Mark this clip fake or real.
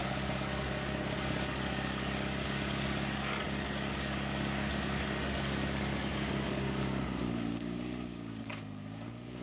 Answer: fake